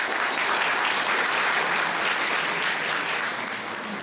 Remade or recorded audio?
recorded